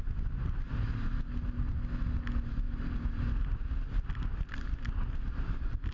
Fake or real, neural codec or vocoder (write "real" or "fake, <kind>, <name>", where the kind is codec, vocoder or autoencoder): real